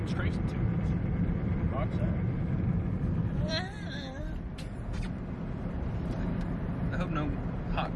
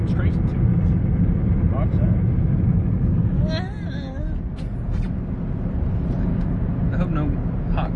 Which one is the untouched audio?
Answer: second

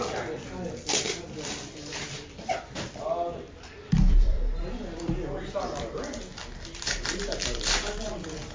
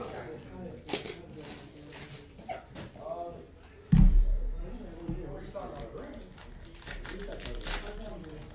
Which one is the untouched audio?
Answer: second